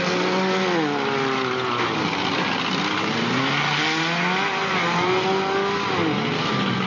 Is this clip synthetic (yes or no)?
no